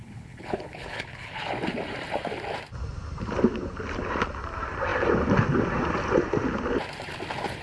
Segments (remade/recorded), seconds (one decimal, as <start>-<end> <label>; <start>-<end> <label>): 0.0-1.4 remade; 1.4-7.6 recorded